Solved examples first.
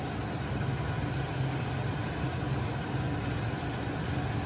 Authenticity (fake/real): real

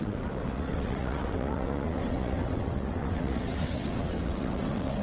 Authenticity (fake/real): fake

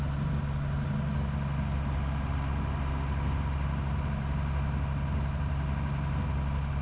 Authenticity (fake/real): real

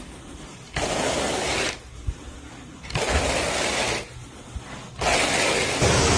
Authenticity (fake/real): real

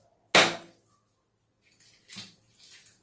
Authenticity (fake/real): real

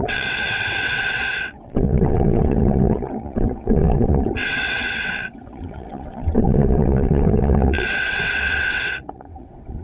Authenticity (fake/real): fake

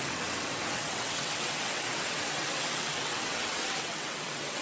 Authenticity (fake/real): fake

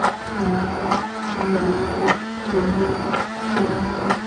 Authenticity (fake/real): real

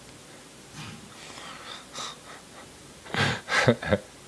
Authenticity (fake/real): real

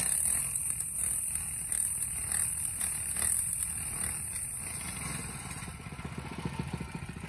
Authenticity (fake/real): real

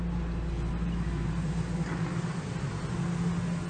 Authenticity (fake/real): real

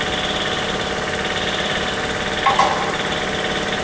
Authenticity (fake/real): real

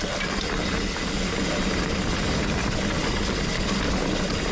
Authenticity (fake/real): real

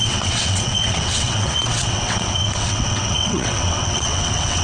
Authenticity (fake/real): fake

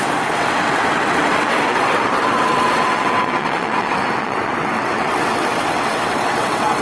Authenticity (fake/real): fake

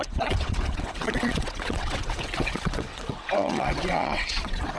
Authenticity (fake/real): fake